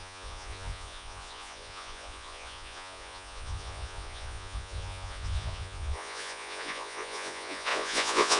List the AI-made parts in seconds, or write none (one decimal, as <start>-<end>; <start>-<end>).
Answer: 0.0-8.4